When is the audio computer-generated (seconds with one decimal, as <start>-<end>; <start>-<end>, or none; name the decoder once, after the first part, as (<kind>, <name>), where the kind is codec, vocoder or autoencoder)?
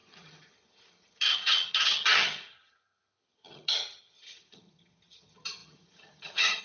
0.0-6.6 (vocoder, HiFi-GAN)